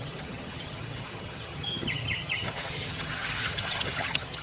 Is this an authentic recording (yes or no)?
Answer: no